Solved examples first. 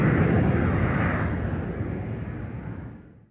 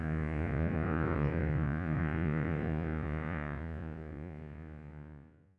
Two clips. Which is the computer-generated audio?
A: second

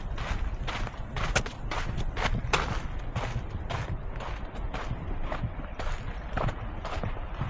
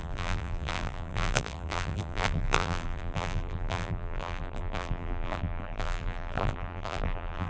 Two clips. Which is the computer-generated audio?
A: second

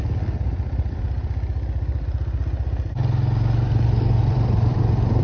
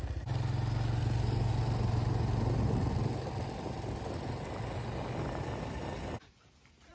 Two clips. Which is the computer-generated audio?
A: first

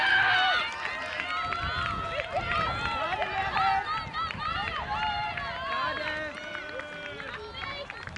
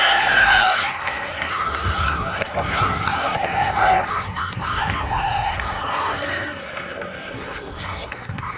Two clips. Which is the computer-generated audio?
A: second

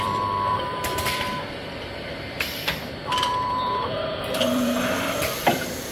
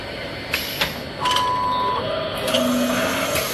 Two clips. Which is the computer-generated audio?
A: first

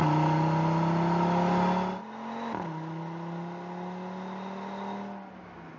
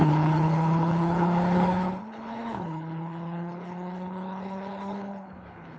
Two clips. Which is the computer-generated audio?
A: second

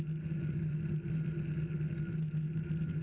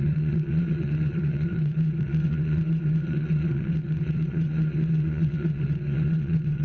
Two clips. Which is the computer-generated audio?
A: second